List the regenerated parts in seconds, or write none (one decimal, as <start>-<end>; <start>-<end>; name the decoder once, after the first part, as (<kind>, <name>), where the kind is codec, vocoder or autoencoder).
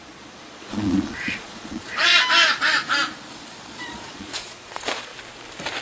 0.0-2.1 (vocoder, Vocos); 3.3-5.1